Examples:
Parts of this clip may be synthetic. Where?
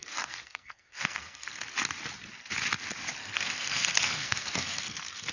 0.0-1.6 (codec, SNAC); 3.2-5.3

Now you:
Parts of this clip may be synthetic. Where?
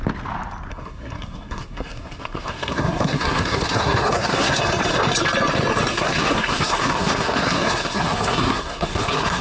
0.7-4.6 (codec, SNAC); 5.9-9.4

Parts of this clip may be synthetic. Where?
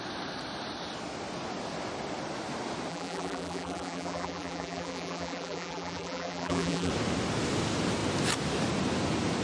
2.9-6.9 (vocoder, BigVGAN v2)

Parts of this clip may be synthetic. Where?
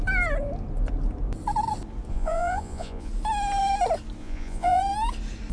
2.1-3.1 (vocoder, Vocos); 4.2-4.8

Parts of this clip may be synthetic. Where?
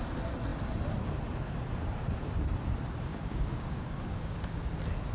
3.1-4.4 (codec, DAC)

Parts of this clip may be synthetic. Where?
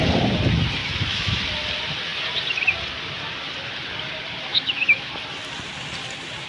0.8-1.4 (autoencoder, DAC-VAE); 4.5-5.1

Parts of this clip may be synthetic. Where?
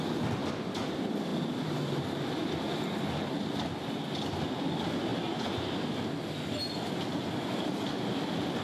none